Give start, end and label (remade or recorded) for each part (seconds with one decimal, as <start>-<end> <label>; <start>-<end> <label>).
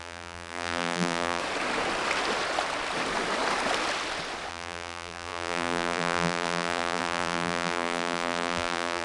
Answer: 0.0-1.4 remade; 1.4-4.5 recorded; 4.5-9.0 remade